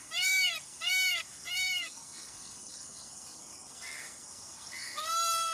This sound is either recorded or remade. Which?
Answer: remade